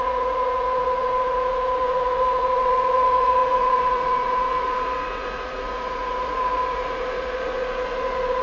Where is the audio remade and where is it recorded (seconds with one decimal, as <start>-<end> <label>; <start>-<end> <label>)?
0.0-8.4 remade